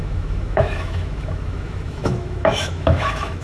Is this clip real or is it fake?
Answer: fake